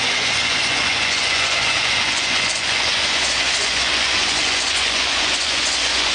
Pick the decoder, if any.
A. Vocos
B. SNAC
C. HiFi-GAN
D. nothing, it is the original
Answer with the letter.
A